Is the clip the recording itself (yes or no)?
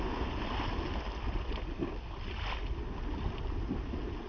yes